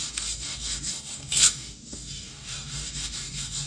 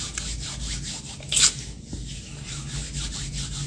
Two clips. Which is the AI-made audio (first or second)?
first